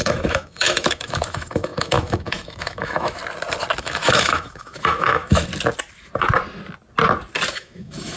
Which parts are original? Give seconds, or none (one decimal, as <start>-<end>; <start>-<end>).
3.2-3.8; 5.5-7.5